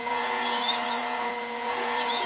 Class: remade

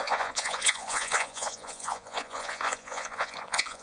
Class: remade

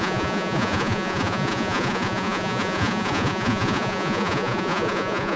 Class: remade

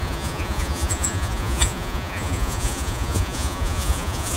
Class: remade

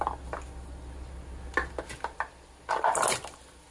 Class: recorded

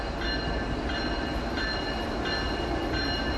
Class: recorded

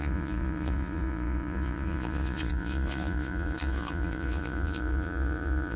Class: remade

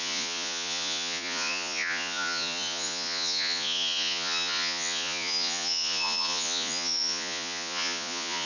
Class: remade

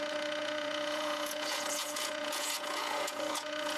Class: remade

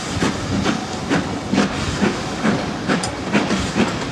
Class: recorded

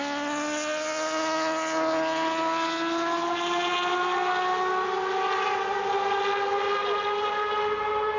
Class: recorded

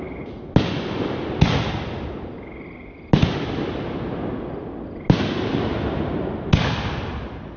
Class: recorded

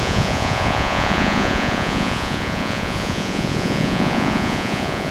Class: remade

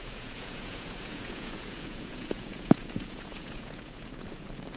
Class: remade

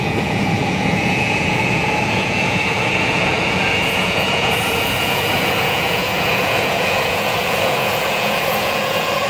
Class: remade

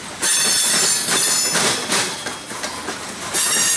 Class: recorded